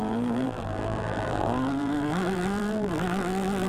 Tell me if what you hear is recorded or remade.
remade